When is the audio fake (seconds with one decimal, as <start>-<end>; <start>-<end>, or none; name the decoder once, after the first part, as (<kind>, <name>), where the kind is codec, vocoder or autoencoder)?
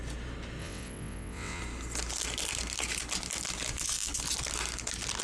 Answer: 0.6-1.6 (vocoder, WaveNeXt)